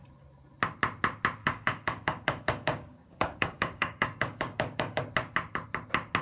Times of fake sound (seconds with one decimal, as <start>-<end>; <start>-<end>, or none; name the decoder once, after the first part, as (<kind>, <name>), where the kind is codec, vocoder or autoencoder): 1.4-5.0 (codec, DAC)